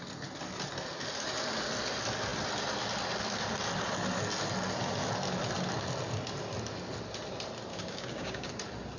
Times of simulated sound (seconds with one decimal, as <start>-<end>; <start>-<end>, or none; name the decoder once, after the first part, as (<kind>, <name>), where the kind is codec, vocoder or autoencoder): 7.7-8.5 (codec, DAC)